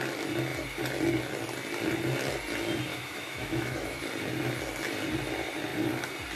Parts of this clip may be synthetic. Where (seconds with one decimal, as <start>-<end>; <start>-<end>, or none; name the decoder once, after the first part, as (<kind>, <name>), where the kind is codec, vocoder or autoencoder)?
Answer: 2.9-4.0 (autoencoder, DAC-VAE)